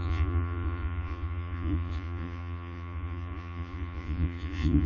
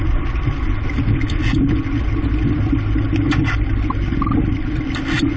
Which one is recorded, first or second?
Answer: second